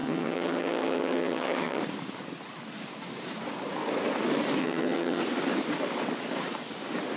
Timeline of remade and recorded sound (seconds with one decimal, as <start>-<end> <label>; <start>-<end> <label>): 0.0-1.8 remade; 1.8-4.6 recorded; 4.6-5.2 remade; 5.2-7.2 recorded